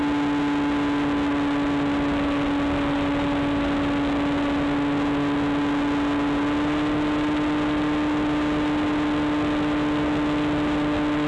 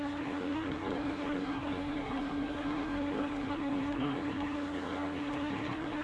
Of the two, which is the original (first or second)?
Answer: first